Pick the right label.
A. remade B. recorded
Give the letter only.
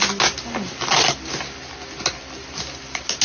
B